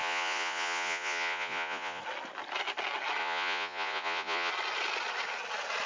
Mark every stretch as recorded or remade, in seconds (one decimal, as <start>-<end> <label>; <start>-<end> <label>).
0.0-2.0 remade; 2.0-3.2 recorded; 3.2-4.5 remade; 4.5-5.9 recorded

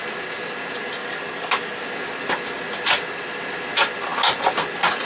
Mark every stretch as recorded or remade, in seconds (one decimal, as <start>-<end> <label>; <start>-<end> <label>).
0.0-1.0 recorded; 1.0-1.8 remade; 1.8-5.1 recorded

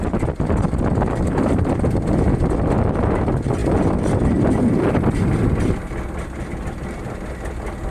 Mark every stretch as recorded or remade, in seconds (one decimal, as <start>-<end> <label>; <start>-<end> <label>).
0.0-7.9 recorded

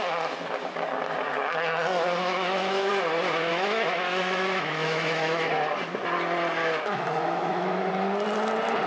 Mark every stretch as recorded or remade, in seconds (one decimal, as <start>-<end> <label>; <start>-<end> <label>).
0.0-2.2 recorded; 2.2-2.9 remade; 2.9-3.5 recorded; 3.5-5.5 remade; 5.5-6.6 recorded; 6.6-7.9 remade; 7.9-8.9 recorded

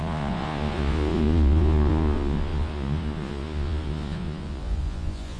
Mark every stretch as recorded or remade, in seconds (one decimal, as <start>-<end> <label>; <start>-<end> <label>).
0.0-5.4 remade

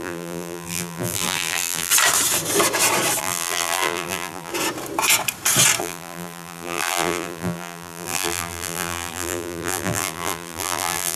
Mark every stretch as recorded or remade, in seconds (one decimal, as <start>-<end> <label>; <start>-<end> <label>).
0.0-1.9 remade; 1.9-3.2 recorded; 3.2-4.5 remade; 4.5-5.8 recorded; 5.8-11.2 remade

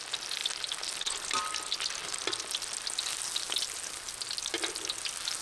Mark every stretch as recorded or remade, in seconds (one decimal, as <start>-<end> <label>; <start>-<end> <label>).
0.0-5.4 recorded

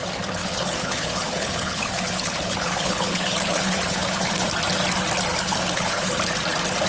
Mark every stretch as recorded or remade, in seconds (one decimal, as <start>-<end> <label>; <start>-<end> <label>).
0.0-0.4 recorded; 0.4-4.5 remade; 4.5-5.3 recorded; 5.3-6.1 remade; 6.1-6.9 recorded